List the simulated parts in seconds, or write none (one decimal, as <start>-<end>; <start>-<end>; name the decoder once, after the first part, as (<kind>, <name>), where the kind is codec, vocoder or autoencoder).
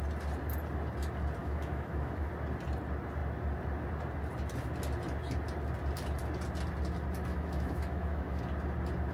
1.4-2.3 (autoencoder, DAC-VAE); 7.3-8.4